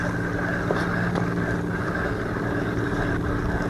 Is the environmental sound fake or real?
real